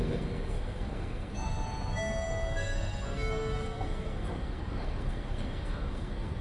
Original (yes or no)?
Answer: no